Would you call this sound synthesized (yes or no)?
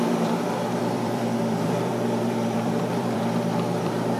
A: yes